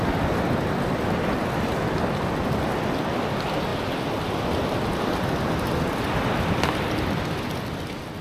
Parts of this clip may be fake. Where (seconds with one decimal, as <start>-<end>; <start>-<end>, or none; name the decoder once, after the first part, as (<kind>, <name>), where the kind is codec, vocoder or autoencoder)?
none